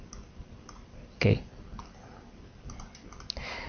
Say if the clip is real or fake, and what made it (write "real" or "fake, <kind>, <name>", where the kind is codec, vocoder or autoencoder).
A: real